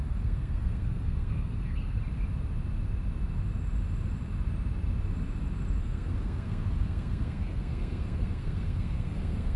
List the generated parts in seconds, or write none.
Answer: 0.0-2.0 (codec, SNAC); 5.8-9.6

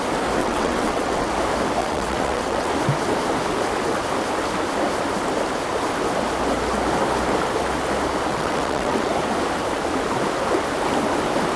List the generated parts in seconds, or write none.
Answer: 0.4-1.3 (vocoder, WaveNeXt); 1.8-2.7; 8.3-9.1

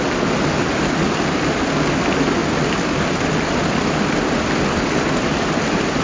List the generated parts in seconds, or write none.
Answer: none

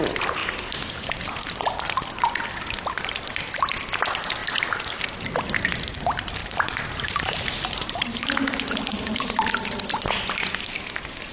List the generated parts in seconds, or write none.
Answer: 6.4-9.5 (vocoder, BigVGAN v2)

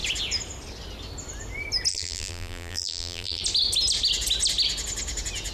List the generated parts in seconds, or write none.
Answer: 1.9-3.4 (vocoder, BigVGAN v2)

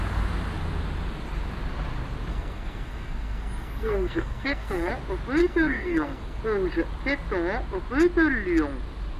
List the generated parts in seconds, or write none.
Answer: 2.3-4.9 (codec, SNAC); 5.4-6.4

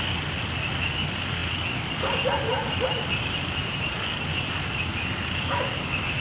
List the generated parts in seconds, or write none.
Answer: none

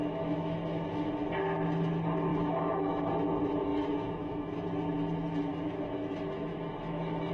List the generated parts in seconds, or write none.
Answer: 0.0-1.3 (autoencoder, DAC-VAE); 2.3-3.1; 3.7-4.7; 5.5-7.3